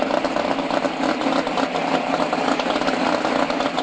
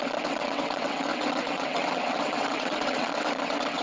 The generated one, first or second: second